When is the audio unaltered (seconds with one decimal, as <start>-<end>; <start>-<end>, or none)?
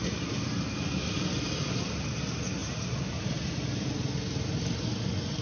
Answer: 0.0-5.4